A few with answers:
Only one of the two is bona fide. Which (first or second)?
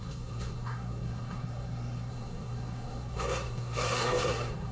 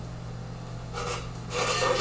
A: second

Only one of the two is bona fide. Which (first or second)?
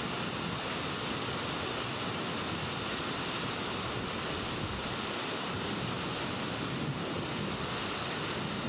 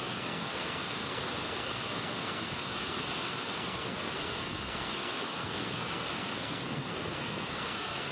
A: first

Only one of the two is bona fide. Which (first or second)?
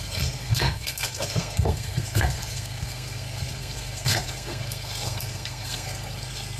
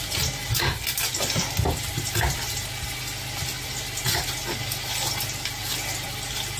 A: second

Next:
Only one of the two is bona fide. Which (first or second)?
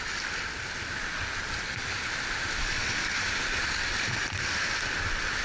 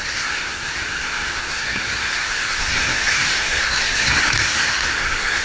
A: first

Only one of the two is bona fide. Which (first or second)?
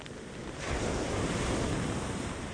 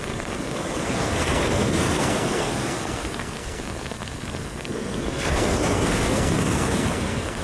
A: first